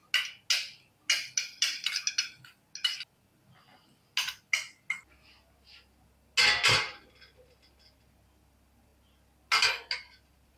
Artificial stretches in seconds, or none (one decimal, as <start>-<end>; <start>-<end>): none